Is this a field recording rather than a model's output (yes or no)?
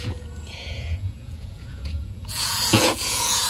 no